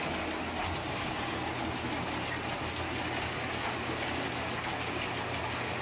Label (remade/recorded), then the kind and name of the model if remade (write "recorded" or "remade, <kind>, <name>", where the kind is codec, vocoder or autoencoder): recorded